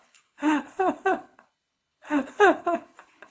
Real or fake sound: fake